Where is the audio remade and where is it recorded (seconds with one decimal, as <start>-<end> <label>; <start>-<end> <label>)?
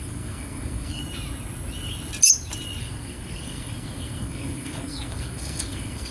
0.0-1.0 remade; 1.0-2.8 recorded; 2.8-6.1 remade